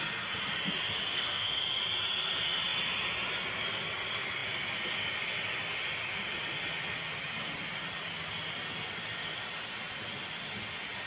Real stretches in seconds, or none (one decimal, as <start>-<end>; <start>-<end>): 0.0-1.1; 1.6-11.1